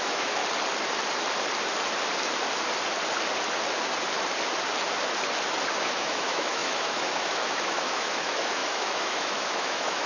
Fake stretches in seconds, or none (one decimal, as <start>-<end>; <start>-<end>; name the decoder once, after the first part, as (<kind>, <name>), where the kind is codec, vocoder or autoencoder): 0.0-0.4 (autoencoder, DAC-VAE); 5.7-10.1